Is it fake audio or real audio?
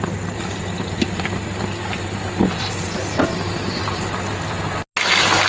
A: real